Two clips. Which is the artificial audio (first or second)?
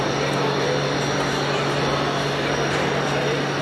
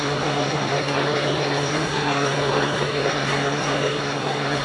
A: second